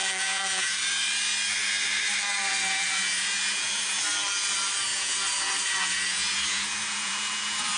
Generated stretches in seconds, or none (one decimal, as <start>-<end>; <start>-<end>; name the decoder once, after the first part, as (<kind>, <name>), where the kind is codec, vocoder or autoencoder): 0.0-0.7 (vocoder, Vocos); 2.5-3.9; 4.9-7.8